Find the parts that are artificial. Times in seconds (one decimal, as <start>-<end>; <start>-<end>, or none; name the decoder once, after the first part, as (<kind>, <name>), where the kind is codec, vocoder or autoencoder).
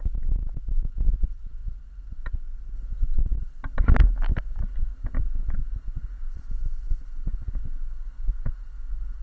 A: none